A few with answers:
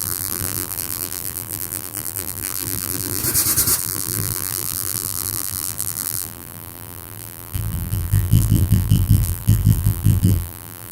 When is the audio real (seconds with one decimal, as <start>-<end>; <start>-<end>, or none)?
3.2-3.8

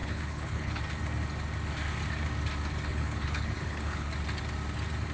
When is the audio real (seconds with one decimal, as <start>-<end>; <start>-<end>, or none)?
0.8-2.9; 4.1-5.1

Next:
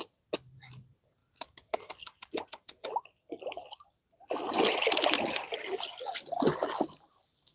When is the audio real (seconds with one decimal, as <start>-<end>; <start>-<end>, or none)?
0.0-7.5

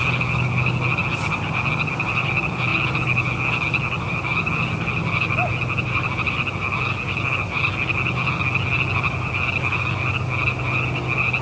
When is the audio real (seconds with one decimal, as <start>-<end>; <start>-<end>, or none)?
0.0-11.4

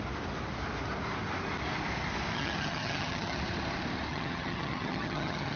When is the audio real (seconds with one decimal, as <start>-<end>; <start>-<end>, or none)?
0.0-2.3; 3.4-4.1

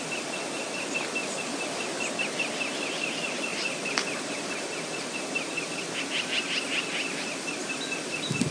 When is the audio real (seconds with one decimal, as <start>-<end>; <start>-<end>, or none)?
0.0-1.2; 2.1-3.5